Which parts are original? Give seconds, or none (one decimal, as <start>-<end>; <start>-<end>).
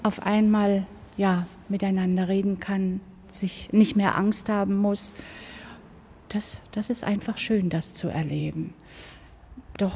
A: 0.0-8.4; 9.5-10.0